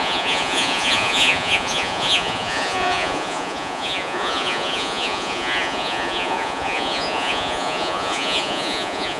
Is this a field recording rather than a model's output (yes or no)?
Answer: no